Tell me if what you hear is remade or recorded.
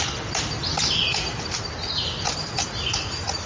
recorded